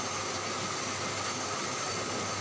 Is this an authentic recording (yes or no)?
yes